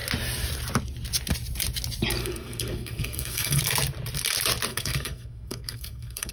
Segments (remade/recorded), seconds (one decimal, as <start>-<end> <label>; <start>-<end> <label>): 0.0-2.2 recorded; 2.2-3.6 remade; 3.6-4.7 recorded; 4.7-6.3 remade